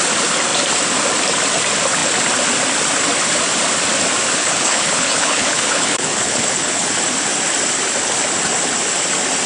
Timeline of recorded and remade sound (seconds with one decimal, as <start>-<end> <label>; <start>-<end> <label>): 0.0-4.4 recorded; 4.4-6.9 remade; 6.9-9.5 recorded